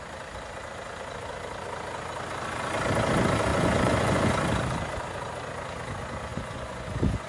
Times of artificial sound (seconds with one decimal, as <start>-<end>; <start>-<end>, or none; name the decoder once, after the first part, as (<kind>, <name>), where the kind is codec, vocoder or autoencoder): 3.5-4.3 (vocoder, Vocos); 6.3-7.3